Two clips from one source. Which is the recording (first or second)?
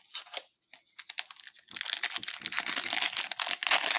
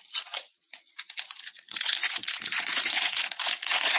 first